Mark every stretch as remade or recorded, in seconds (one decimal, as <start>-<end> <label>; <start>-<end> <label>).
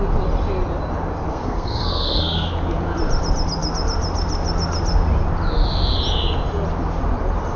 0.0-1.3 recorded; 1.3-2.5 remade; 2.5-7.6 recorded